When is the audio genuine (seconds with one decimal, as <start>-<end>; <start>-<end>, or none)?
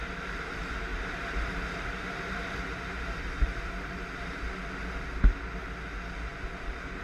0.0-0.9; 4.4-7.0